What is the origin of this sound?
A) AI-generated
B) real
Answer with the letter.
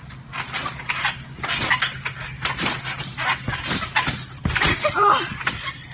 B